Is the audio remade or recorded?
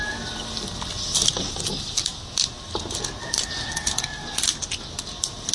recorded